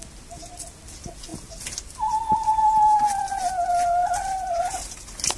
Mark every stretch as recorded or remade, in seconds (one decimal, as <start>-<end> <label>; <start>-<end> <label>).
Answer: 0.0-5.4 recorded